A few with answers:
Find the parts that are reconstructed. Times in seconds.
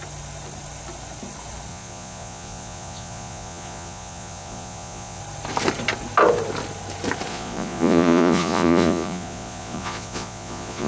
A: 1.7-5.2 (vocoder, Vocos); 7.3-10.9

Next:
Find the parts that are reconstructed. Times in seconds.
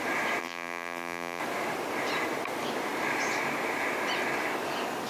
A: 0.4-1.4 (vocoder, BigVGAN v2)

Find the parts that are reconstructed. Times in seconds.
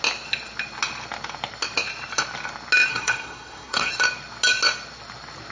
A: 2.9-3.9 (codec, SNAC)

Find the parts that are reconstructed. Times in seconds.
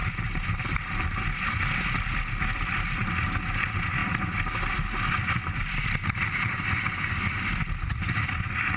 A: none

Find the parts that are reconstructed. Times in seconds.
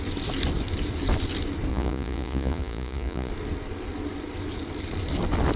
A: 1.7-3.3 (vocoder, Vocos)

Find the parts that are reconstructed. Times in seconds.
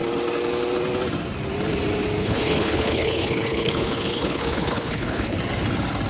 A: 2.2-5.4 (codec, HILCodec)